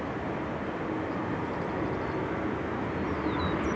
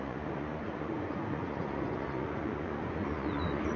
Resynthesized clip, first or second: second